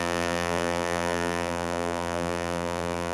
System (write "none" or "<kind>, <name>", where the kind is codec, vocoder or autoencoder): vocoder, BigVGAN v2